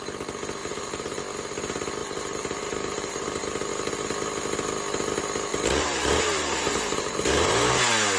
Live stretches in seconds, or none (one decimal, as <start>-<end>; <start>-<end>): 0.0-0.6; 1.2-2.0; 3.7-5.5; 7.7-8.2